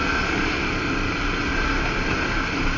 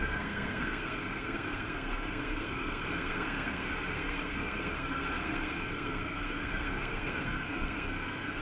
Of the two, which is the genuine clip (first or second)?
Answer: first